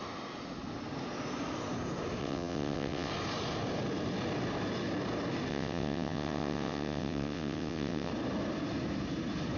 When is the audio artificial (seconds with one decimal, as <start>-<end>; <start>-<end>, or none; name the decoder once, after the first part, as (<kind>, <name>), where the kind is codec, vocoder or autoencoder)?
2.2-3.1 (vocoder, WaveNeXt); 5.5-8.1